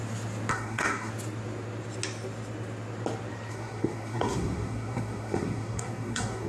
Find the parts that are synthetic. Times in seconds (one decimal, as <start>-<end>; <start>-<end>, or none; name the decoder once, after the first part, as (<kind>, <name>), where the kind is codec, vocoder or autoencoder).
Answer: 0.5-1.1 (codec, SNAC); 3.5-6.5